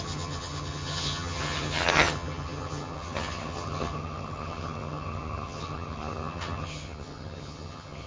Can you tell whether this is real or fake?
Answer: fake